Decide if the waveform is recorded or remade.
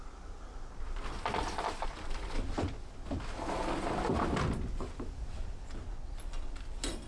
recorded